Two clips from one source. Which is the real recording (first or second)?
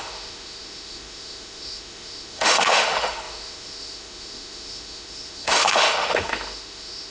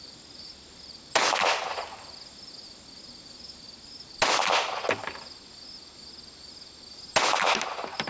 second